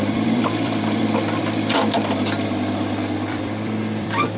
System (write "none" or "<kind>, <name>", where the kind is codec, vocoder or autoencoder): vocoder, BigVGAN v2